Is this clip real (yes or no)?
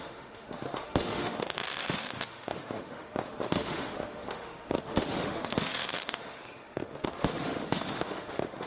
no